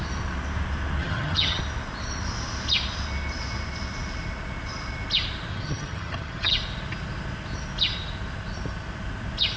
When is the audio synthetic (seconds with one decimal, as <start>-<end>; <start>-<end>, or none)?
1.0-1.6; 5.5-6.5